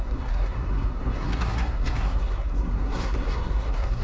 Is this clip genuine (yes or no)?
no